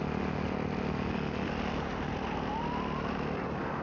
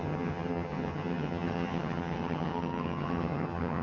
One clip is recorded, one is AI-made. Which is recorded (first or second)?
first